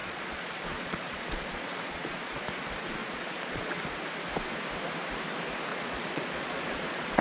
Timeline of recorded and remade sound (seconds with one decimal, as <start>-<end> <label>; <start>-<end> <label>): 0.0-2.6 remade; 2.6-3.0 recorded; 3.0-3.8 remade; 3.8-5.7 recorded; 5.7-7.2 remade